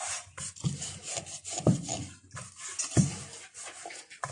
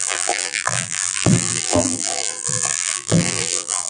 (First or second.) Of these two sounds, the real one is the first